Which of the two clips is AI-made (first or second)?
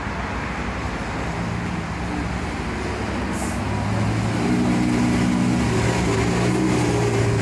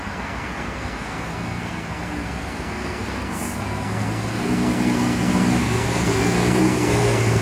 second